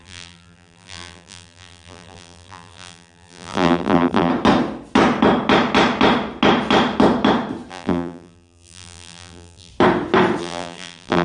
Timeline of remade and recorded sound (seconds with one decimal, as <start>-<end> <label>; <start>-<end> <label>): 0.0-4.3 remade; 4.3-7.7 recorded; 7.7-9.7 remade; 9.7-10.4 recorded; 10.4-11.2 remade